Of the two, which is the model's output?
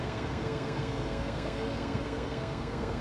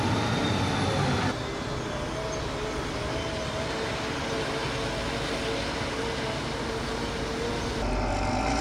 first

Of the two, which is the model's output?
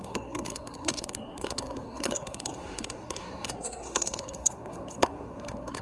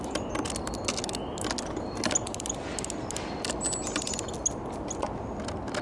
first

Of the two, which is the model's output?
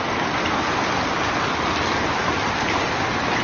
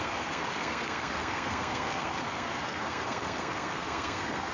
second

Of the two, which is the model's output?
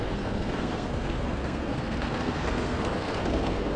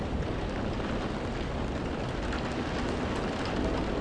first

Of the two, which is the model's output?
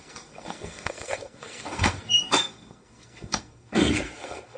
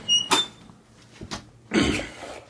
first